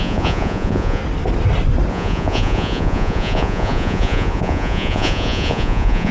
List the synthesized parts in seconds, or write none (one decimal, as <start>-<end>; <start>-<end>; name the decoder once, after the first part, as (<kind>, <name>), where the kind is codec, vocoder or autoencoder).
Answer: 0.0-1.0 (vocoder, Vocos); 1.9-6.1